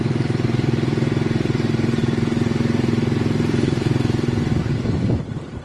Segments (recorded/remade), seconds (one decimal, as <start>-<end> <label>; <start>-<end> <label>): 0.0-5.6 recorded